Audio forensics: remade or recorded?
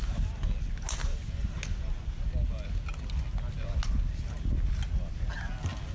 recorded